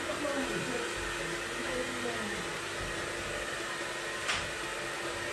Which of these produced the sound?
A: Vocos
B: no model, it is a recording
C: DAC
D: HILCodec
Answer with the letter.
B